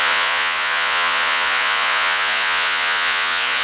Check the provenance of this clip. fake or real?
fake